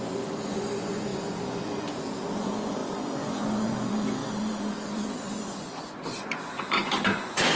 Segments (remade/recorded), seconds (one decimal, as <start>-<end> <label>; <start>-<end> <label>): 0.0-7.6 remade